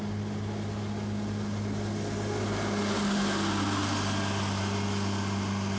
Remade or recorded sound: recorded